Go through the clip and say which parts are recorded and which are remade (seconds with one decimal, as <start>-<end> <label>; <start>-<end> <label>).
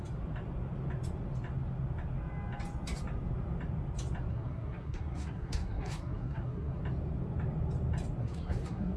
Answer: 0.0-4.3 recorded; 4.3-6.8 remade; 6.8-8.2 recorded; 8.2-9.0 remade